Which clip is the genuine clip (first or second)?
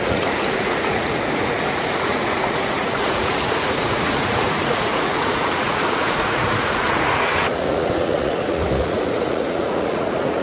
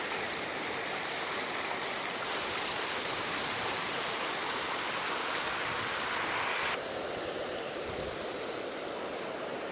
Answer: second